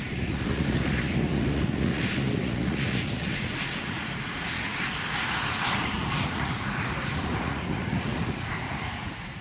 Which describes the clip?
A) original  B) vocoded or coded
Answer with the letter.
B